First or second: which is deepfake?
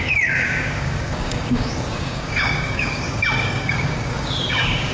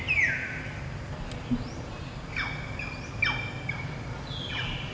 first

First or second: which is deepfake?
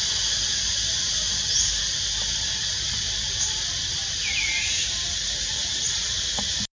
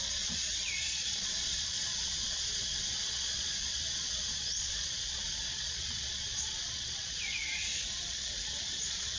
second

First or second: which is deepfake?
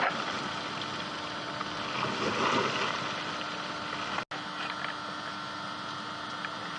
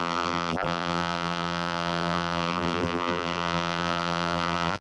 second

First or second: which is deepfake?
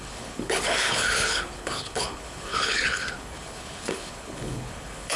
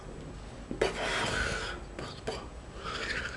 first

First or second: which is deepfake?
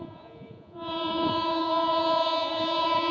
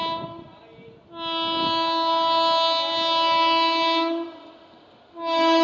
first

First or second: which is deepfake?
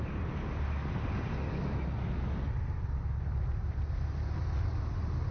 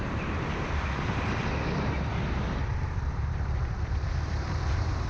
second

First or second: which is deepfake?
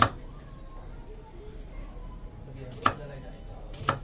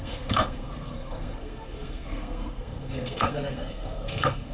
second